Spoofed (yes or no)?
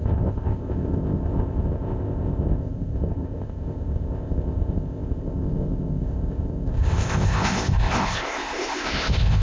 yes